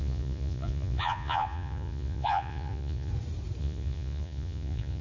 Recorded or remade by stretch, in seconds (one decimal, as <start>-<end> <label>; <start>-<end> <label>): 0.0-3.1 remade; 3.1-3.6 recorded; 3.6-5.0 remade